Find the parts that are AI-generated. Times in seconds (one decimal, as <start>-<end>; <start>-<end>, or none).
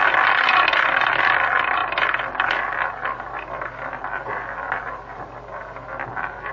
none